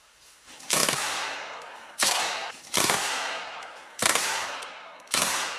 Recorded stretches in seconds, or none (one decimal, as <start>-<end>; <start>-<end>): none